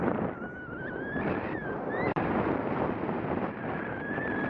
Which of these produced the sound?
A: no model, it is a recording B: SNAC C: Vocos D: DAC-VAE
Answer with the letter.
A